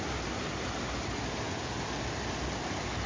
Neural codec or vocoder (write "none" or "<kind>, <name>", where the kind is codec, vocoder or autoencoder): none